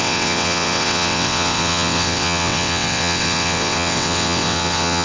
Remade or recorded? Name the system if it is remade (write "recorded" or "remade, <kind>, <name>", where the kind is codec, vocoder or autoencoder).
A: remade, vocoder, WaveNeXt